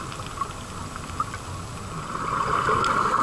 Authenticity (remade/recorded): recorded